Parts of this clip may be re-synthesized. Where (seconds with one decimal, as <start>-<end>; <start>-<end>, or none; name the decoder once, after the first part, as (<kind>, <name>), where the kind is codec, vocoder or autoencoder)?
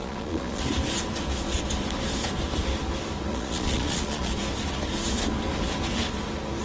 0.0-0.6 (vocoder, Vocos); 3.3-4.3